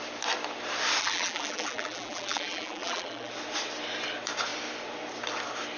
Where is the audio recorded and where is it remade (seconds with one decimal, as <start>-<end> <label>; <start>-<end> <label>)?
0.0-1.0 recorded; 1.0-3.3 remade; 3.3-5.8 recorded